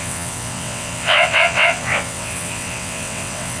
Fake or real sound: fake